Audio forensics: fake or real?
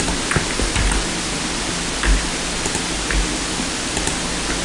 real